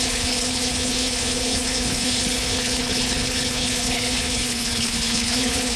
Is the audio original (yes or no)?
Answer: no